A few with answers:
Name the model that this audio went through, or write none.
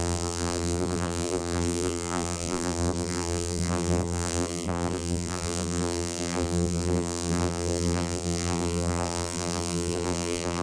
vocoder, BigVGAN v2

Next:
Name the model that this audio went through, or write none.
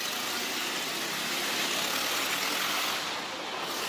none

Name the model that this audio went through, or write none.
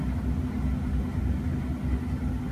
none